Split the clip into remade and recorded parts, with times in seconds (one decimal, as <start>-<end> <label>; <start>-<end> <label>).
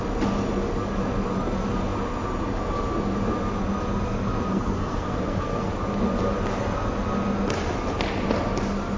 0.0-4.5 recorded; 4.5-5.7 remade; 5.7-9.0 recorded